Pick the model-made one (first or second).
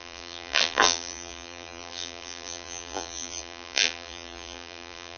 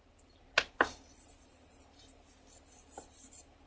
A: first